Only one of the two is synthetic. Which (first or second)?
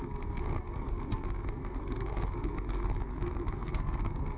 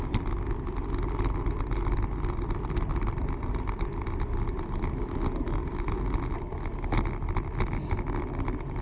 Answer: first